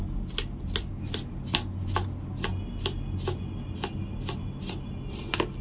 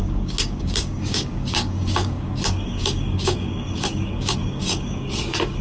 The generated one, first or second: second